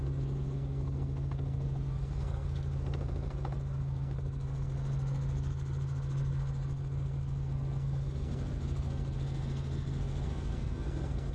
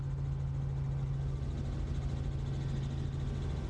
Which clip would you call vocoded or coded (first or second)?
first